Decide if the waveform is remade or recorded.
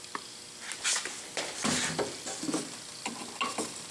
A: recorded